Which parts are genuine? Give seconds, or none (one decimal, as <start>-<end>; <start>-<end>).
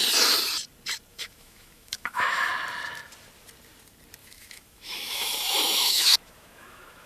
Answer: 0.0-1.1; 2.5-4.2